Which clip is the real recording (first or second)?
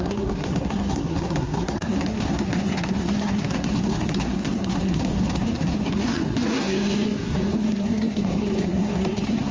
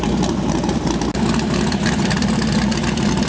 second